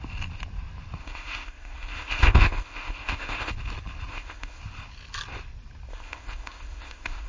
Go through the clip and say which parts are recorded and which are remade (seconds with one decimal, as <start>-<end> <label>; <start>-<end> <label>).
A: 0.0-1.0 recorded; 1.0-3.5 remade; 3.5-4.1 recorded; 4.1-4.6 remade; 4.6-5.9 recorded; 5.9-7.3 remade